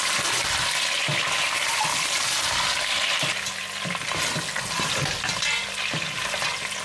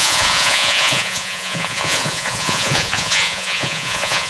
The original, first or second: first